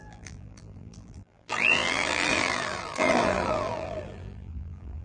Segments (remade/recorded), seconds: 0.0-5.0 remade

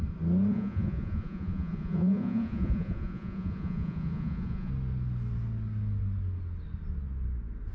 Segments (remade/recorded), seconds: 0.0-0.5 recorded; 0.5-4.7 remade; 4.7-7.7 recorded

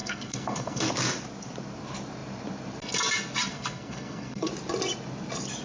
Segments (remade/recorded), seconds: 0.0-0.9 remade; 0.9-3.5 recorded; 3.5-4.5 remade; 4.5-5.6 recorded

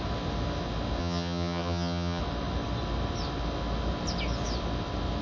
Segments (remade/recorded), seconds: 0.0-1.0 recorded; 1.0-2.2 remade; 2.2-5.2 recorded

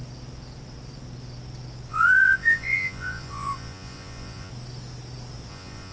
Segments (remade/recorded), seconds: 0.0-1.9 recorded; 1.9-4.5 remade; 4.5-5.5 recorded; 5.5-5.9 remade

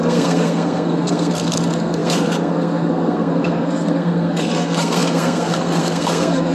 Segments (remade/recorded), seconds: 0.0-6.5 remade

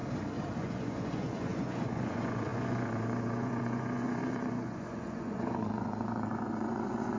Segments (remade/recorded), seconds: 0.0-0.6 recorded; 0.6-7.2 remade